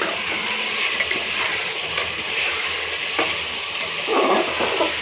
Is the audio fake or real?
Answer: fake